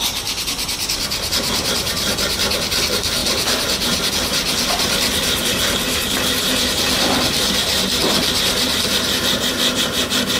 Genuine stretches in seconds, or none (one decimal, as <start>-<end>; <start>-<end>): 0.0-3.2; 4.1-10.4